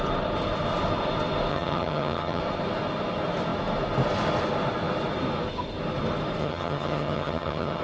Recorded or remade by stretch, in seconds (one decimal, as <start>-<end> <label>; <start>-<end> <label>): 0.0-1.5 recorded; 1.5-2.4 remade; 2.4-6.4 recorded; 6.4-7.8 remade